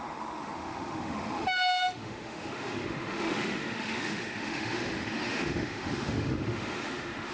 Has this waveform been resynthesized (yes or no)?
yes